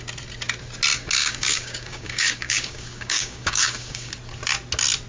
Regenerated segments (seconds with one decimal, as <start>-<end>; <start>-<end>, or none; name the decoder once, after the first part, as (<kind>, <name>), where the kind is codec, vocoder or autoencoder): 1.2-4.1 (codec, DAC)